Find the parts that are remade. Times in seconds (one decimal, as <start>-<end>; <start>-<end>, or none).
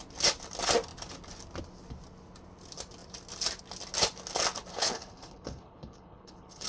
4.7-6.7